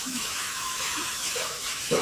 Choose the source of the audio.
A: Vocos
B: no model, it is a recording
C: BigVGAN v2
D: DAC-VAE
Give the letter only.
D